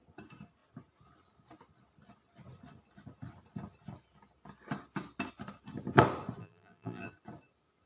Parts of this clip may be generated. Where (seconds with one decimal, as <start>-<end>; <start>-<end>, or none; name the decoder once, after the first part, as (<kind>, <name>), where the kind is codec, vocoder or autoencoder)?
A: 6.4-7.1 (vocoder, BigVGAN v2)